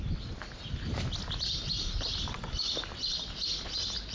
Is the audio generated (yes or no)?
no